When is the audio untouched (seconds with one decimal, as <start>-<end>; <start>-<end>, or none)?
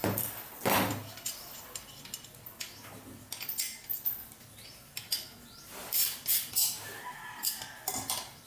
0.0-8.5